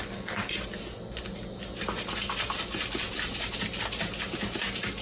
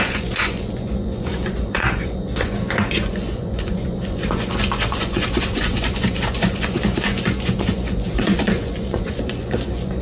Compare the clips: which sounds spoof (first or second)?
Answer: second